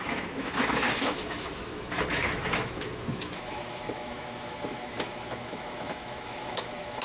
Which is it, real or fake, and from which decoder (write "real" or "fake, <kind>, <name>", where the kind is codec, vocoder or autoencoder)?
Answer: fake, autoencoder, DAC-VAE